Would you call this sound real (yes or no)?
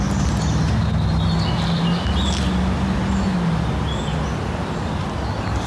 yes